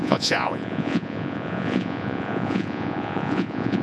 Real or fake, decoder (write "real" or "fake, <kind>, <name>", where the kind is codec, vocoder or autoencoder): fake, vocoder, Vocos